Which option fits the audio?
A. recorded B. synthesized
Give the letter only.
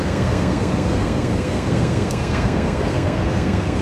B